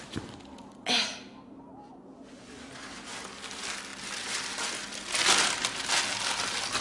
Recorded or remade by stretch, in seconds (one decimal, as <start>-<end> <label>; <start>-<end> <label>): 0.0-6.8 recorded